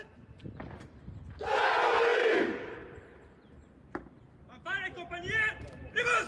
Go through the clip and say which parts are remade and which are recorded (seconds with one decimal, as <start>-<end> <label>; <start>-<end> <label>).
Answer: 0.0-6.3 recorded

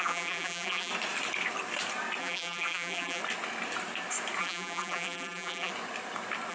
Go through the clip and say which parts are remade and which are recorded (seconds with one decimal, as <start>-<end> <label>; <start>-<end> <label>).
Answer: 0.0-0.9 remade; 0.9-2.2 recorded; 2.2-3.2 remade; 3.2-4.4 recorded; 4.4-5.7 remade; 5.7-6.5 recorded

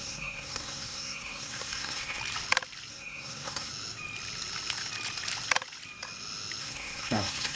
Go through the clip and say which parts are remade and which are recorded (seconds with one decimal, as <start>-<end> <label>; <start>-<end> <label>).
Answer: 0.0-2.2 remade; 2.2-2.9 recorded; 2.9-3.7 remade; 3.7-6.6 recorded; 6.6-7.6 remade